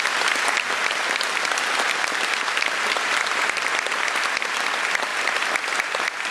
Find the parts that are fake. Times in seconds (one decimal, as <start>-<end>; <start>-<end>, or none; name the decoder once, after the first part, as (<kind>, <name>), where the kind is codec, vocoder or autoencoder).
none